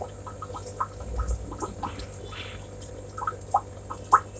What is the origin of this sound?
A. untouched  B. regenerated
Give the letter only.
A